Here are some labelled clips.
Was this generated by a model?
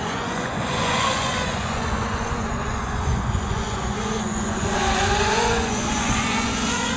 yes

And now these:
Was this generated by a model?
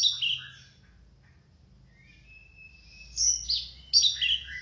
no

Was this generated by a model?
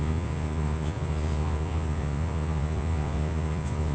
yes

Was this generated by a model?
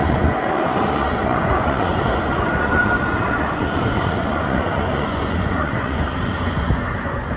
yes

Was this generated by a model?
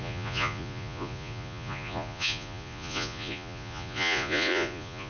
yes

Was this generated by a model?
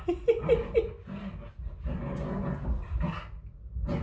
no